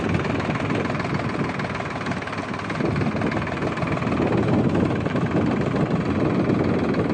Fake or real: real